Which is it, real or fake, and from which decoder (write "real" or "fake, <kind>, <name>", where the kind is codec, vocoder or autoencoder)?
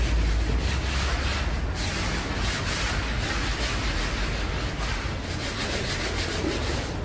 real